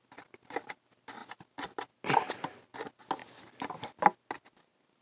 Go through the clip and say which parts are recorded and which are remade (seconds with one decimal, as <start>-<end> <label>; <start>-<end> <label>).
0.0-5.0 recorded